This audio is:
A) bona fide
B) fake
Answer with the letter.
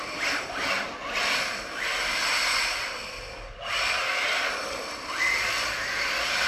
A